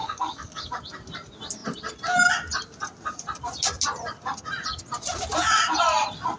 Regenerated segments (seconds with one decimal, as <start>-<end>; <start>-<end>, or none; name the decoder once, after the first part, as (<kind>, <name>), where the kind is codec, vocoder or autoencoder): 0.0-0.7 (codec, DAC)